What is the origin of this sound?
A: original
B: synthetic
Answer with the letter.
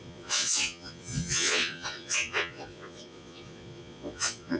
B